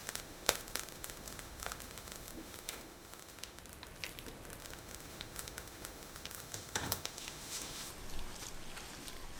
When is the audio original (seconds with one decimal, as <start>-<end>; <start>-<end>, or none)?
3.6-4.6; 7.9-9.4